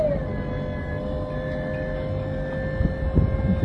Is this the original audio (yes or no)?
yes